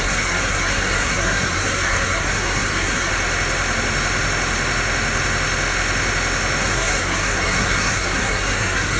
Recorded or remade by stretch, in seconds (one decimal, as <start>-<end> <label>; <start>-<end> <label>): 0.0-3.1 remade; 3.1-6.6 recorded; 6.6-9.0 remade